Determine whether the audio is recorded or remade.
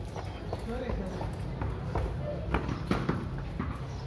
recorded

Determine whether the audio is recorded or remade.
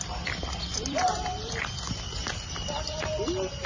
remade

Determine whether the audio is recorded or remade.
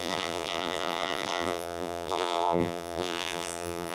remade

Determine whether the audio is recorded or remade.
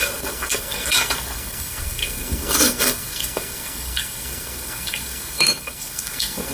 remade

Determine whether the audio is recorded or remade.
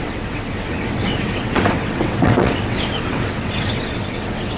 remade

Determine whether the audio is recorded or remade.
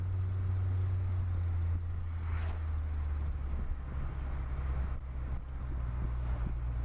recorded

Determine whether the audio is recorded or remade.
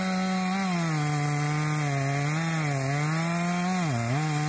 recorded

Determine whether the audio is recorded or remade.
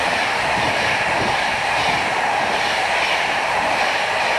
remade